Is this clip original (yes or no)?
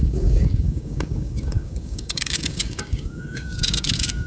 no